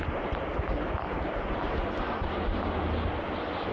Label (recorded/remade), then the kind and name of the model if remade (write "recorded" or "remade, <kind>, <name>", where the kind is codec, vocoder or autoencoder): recorded